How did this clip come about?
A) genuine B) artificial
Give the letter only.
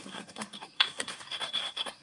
B